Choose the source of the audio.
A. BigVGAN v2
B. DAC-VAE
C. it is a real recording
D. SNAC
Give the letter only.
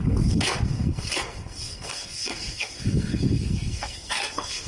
D